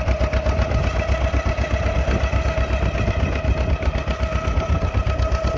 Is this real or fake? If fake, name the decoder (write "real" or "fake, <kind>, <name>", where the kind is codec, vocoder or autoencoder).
real